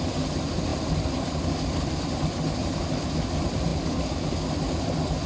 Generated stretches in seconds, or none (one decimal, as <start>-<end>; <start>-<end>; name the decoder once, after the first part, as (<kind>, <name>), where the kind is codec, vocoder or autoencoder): none